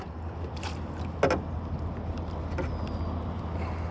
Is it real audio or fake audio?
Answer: real